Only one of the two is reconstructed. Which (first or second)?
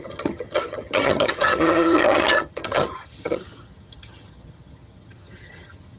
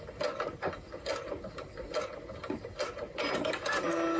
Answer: first